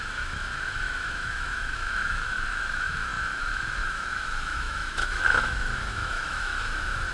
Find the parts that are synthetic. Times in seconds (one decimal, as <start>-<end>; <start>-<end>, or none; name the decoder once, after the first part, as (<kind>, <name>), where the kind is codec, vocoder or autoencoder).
0.0-7.1 (autoencoder, DAC-VAE)